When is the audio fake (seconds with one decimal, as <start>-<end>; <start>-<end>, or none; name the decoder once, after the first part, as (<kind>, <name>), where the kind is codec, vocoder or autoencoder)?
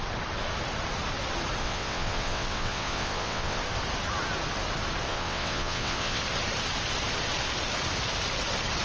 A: 1.6-3.6 (vocoder, WaveNeXt); 5.1-6.2